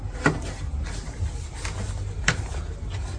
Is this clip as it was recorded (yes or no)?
yes